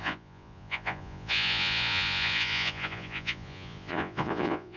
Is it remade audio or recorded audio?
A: remade